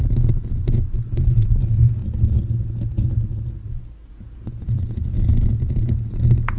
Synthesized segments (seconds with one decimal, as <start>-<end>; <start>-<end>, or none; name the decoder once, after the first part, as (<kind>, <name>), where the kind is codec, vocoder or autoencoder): 0.0-2.0 (vocoder, Vocos); 4.1-6.6